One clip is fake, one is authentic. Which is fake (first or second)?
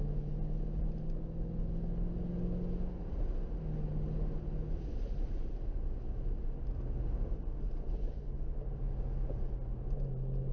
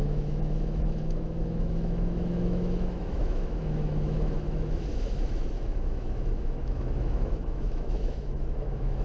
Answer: second